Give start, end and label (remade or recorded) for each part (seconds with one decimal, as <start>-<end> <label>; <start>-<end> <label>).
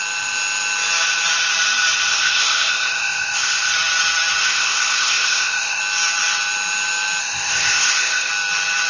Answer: 0.0-2.1 recorded; 2.1-3.7 remade; 3.7-4.4 recorded; 4.4-5.8 remade; 5.8-7.2 recorded; 7.2-8.3 remade; 8.3-8.9 recorded